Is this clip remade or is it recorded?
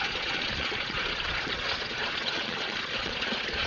remade